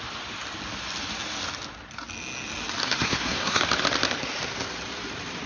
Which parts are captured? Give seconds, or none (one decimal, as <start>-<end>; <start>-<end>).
0.0-2.8; 3.6-5.5